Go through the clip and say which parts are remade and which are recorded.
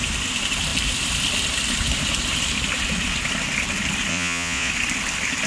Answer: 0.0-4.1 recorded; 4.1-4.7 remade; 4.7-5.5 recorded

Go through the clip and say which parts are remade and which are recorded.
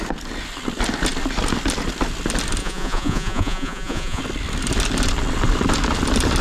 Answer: 0.0-2.6 recorded; 2.6-4.2 remade; 4.2-6.4 recorded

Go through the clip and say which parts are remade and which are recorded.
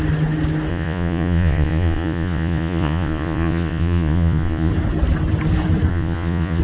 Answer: 0.0-0.7 recorded; 0.7-4.7 remade; 4.7-5.9 recorded; 5.9-6.6 remade